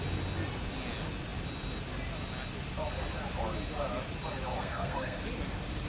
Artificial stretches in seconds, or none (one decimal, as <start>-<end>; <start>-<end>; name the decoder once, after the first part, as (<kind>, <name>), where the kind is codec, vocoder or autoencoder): 4.5-5.2 (codec, SNAC)

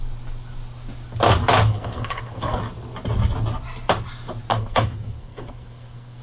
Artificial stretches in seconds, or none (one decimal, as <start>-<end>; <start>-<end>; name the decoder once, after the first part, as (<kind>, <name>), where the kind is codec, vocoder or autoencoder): 1.7-2.6 (codec, SNAC); 4.5-6.2

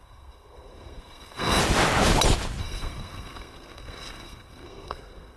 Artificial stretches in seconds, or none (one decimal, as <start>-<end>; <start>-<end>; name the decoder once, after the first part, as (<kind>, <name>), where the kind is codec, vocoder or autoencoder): 0.0-1.6 (codec, SNAC); 2.6-5.4

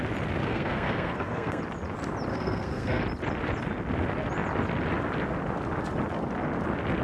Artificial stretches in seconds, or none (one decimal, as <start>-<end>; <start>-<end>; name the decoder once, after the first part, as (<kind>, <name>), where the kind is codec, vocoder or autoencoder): 0.4-1.6 (codec, SNAC); 2.3-3.0

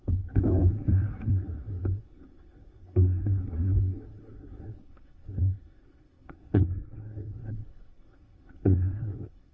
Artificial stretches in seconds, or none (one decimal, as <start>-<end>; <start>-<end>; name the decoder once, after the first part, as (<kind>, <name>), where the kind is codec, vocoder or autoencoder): 0.0-9.5 (codec, SNAC)

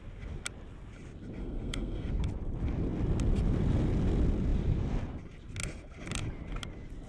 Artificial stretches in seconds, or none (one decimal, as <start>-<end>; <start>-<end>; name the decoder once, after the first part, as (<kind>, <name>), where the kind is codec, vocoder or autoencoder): 1.4-2.1 (codec, SNAC)

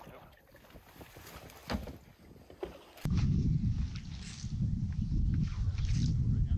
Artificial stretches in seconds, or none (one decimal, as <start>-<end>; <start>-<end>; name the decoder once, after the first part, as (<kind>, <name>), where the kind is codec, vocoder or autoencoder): none

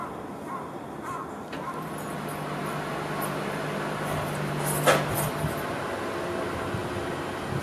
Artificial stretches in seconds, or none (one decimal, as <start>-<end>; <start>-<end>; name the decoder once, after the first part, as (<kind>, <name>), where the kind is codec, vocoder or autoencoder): none